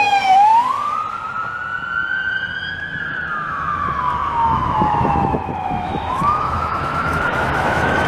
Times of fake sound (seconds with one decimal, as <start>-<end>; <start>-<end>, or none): 0.0-0.5; 3.0-8.1